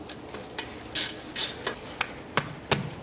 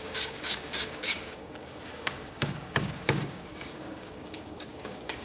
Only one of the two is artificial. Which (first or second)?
second